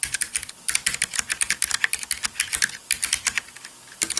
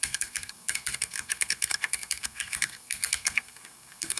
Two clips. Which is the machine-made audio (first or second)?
second